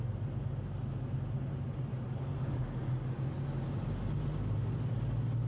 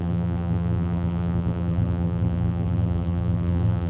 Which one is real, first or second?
first